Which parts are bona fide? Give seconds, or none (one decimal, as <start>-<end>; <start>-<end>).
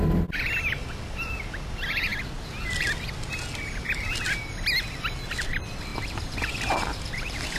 0.0-7.6